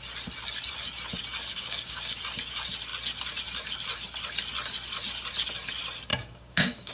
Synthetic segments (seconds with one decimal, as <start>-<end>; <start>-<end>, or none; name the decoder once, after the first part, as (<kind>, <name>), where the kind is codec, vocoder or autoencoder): 1.5-2.2 (codec, DAC); 6.1-6.9